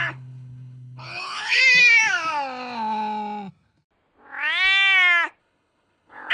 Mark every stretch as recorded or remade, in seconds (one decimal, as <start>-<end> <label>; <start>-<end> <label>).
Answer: 0.0-1.6 remade; 1.6-5.4 recorded; 5.4-6.3 remade